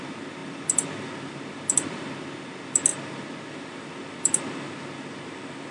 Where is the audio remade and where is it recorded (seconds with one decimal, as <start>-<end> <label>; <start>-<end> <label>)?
0.0-5.7 recorded